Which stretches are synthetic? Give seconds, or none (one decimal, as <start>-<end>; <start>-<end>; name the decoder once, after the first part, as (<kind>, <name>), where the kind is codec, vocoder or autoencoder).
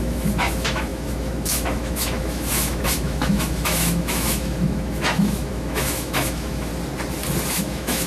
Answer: 0.0-6.7 (autoencoder, DAC-VAE); 7.5-8.1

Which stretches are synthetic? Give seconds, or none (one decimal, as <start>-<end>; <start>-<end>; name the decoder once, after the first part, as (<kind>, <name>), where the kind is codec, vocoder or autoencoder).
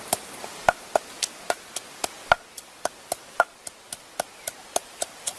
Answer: 0.0-0.6 (vocoder, BigVGAN v2); 2.5-3.2; 3.8-4.3; 4.8-5.4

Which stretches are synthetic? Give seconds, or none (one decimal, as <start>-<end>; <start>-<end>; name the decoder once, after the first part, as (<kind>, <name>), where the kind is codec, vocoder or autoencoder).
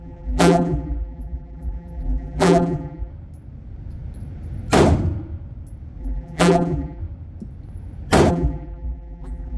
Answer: 0.0-3.1 (vocoder, BigVGAN v2); 6.0-7.0; 8.3-9.6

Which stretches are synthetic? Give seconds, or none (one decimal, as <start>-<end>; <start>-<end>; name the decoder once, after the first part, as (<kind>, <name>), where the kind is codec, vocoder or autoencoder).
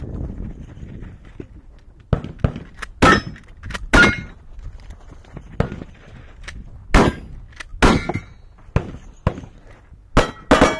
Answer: none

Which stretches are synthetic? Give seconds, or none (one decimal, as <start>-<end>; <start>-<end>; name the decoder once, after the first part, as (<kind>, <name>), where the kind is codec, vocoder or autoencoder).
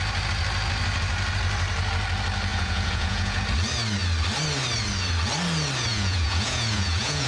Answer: 2.5-3.4 (vocoder, Vocos); 5.9-7.3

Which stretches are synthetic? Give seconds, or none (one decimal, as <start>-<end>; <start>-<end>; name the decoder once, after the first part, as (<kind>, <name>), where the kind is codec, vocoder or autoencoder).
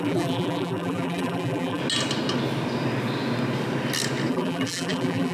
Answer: 0.0-1.8 (vocoder, BigVGAN v2); 4.3-5.3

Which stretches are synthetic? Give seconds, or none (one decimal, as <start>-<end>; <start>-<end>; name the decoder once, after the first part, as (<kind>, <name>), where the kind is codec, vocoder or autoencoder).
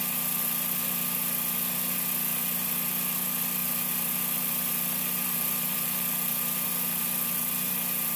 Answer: 3.6-6.1 (vocoder, BigVGAN v2)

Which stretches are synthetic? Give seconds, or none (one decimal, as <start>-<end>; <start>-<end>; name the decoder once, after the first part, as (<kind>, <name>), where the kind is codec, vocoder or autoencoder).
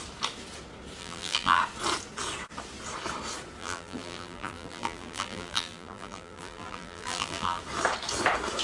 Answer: 1.0-1.6 (vocoder, BigVGAN v2); 3.6-7.6